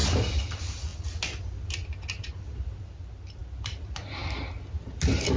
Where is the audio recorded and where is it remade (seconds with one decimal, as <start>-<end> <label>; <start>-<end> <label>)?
0.0-5.4 recorded